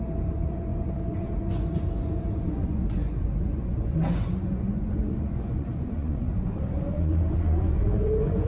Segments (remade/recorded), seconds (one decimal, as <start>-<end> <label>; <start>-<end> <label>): 0.0-8.5 remade